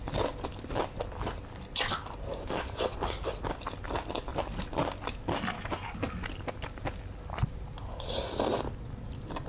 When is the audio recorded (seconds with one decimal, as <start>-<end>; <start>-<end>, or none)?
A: 0.0-9.5